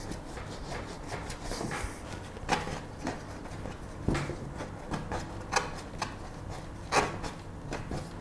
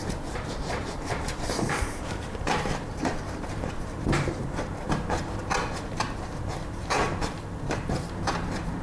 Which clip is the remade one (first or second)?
second